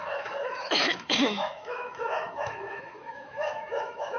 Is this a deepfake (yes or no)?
yes